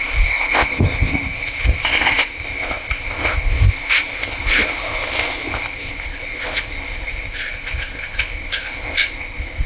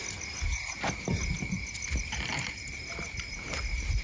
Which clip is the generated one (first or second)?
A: first